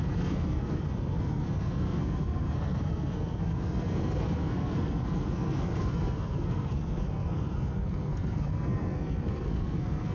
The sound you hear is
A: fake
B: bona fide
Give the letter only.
A